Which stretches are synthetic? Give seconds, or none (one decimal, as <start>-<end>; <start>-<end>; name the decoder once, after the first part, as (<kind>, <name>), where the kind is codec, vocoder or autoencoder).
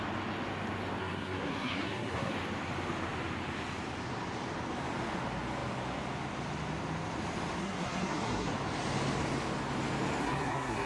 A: 1.0-2.3 (codec, SNAC); 7.6-8.5; 10.2-10.9